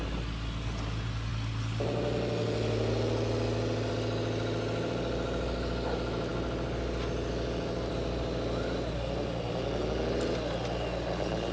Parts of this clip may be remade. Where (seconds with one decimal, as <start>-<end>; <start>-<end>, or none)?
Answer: none